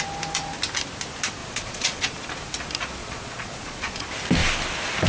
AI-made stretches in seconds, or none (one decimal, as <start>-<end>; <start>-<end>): 1.4-2.2; 3.0-4.0